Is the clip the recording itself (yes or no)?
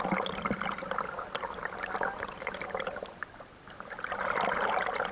yes